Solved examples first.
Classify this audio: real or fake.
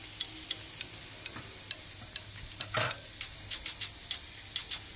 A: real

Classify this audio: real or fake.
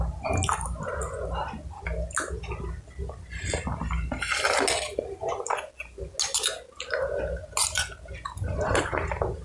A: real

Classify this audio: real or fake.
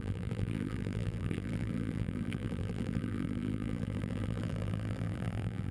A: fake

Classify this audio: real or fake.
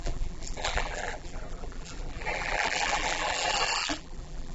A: fake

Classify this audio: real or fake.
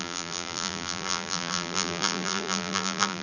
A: fake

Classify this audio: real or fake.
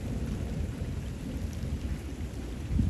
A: fake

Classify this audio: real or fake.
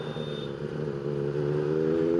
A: real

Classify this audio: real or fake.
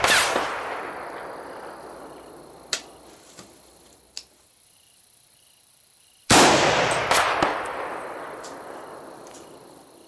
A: fake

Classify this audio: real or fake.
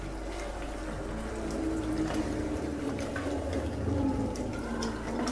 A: real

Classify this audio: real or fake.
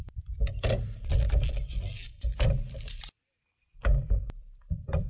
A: fake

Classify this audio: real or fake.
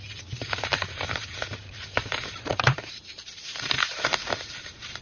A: fake